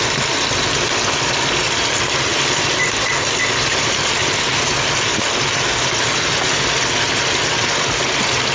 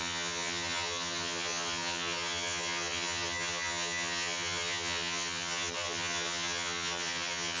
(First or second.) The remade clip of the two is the second